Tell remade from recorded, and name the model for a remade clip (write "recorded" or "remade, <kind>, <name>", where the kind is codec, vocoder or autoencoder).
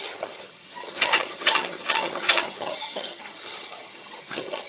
remade, vocoder, HiFi-GAN